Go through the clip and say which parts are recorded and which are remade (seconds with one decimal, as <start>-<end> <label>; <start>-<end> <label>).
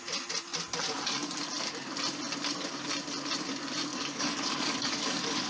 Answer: 0.0-3.9 recorded; 3.9-5.5 remade